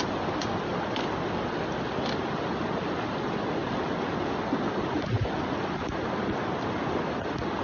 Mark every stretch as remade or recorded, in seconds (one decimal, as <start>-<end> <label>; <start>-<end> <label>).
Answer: 0.0-7.6 recorded